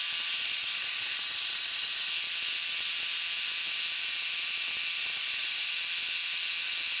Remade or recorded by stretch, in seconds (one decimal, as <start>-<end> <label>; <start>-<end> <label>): 0.0-0.4 recorded; 0.4-2.1 remade; 2.1-5.0 recorded; 5.0-5.7 remade; 5.7-7.0 recorded